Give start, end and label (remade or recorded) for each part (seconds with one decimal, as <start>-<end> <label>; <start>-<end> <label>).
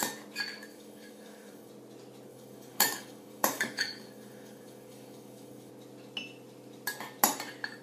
0.0-0.7 recorded; 0.7-1.7 remade; 1.7-2.3 recorded; 2.3-5.7 remade; 5.7-7.8 recorded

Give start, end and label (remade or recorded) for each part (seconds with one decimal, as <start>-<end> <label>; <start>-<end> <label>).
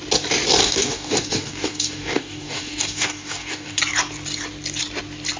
0.0-0.6 recorded; 0.6-3.8 remade; 3.8-5.4 recorded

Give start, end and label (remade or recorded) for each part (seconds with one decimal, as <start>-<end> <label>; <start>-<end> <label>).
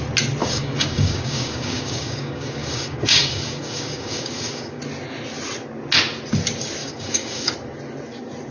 0.0-0.4 recorded; 0.4-4.8 remade; 4.8-6.8 recorded; 6.8-7.5 remade; 7.5-8.5 recorded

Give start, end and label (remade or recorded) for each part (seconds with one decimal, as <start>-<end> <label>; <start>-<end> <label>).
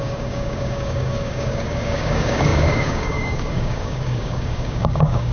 0.0-5.3 remade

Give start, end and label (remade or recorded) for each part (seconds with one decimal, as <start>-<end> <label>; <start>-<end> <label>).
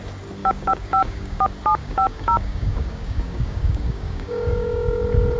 0.0-0.4 recorded; 0.4-1.4 remade; 1.4-1.8 recorded; 1.8-5.0 remade; 5.0-5.4 recorded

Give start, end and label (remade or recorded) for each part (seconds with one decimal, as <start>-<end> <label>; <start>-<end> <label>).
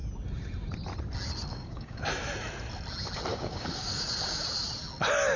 0.0-1.5 recorded; 1.5-2.0 remade; 2.0-3.3 recorded; 3.3-4.0 remade; 4.0-5.4 recorded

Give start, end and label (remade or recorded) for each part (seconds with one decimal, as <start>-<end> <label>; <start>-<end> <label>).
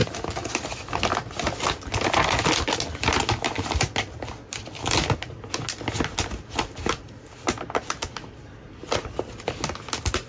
0.0-10.3 recorded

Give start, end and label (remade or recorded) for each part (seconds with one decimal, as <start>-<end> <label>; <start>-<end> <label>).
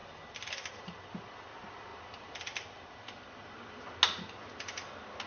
0.0-5.3 recorded